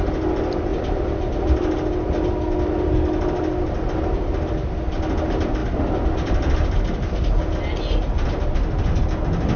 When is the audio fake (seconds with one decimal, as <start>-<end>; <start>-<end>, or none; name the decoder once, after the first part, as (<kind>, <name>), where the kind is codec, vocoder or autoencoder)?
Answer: none